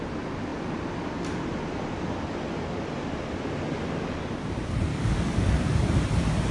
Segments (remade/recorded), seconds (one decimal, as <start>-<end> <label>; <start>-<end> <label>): 0.0-4.9 recorded; 4.9-5.8 remade; 5.8-6.5 recorded